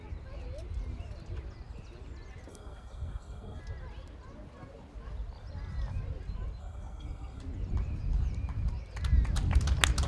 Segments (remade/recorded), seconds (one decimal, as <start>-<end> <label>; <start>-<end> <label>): 0.0-2.5 recorded; 2.5-3.6 remade; 3.6-6.6 recorded; 6.6-7.4 remade; 7.4-10.1 recorded